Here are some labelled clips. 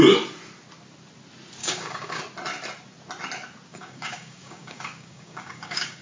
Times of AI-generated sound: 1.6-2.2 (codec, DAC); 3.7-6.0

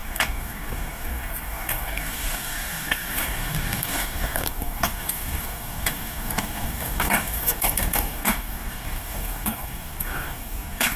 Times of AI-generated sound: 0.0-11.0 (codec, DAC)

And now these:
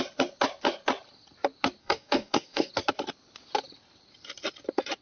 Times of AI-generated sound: 1.8-2.7 (codec, DAC)

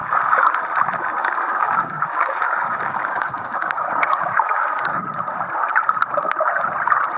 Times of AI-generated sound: 0.0-0.5 (codec, DAC); 1.2-5.0

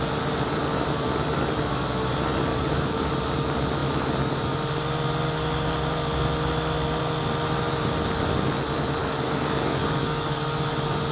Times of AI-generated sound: 2.5-3.1 (codec, DAC); 9.0-10.4

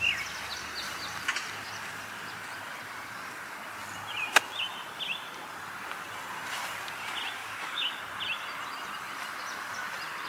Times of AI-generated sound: 7.4-8.0 (codec, DAC)